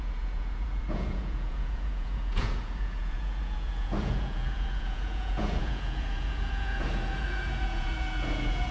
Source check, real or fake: fake